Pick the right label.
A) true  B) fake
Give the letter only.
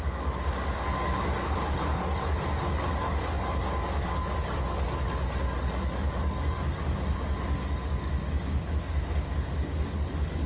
B